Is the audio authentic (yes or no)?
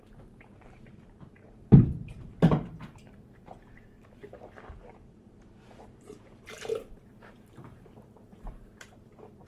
no